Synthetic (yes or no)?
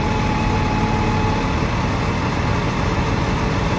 no